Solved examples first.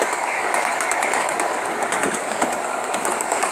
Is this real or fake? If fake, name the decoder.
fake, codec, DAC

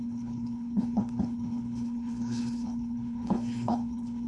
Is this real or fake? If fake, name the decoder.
fake, codec, HILCodec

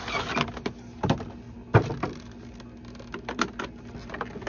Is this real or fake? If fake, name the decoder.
real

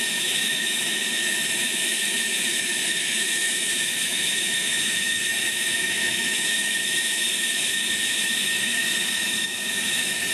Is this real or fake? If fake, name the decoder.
fake, autoencoder, DAC-VAE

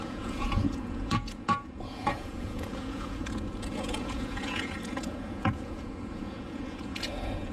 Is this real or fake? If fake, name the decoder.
fake, vocoder, Vocos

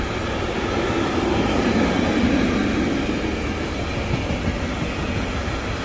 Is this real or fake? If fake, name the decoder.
real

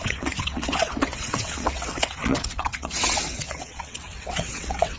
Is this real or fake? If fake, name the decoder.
fake, vocoder, WaveNeXt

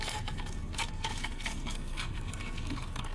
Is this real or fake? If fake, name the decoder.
fake, codec, SNAC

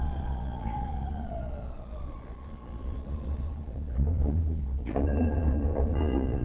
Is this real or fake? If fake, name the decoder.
fake, vocoder, Vocos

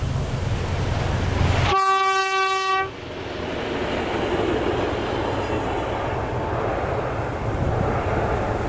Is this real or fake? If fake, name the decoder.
real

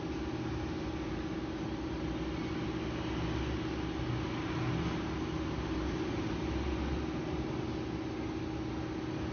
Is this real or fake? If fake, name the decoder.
real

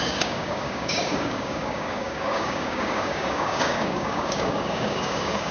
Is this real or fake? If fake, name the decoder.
fake, codec, DAC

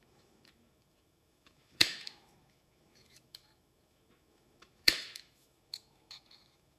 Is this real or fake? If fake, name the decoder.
fake, autoencoder, DAC-VAE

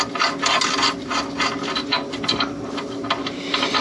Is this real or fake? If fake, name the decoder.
real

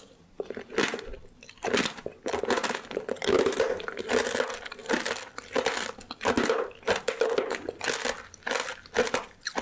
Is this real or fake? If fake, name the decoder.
real